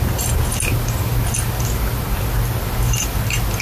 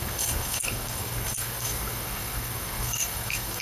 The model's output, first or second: second